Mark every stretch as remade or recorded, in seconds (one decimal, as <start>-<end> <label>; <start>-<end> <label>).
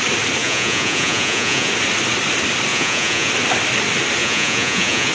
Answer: 0.0-0.4 recorded; 0.4-1.7 remade; 1.7-2.7 recorded; 2.7-3.3 remade; 3.3-4.2 recorded; 4.2-5.1 remade